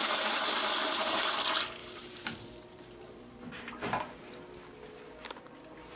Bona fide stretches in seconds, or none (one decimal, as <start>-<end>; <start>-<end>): 1.4-1.8; 4.0-6.0